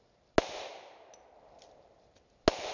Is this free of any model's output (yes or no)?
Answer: yes